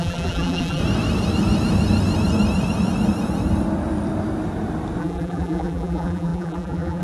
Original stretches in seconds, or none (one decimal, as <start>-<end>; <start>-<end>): 0.8-5.0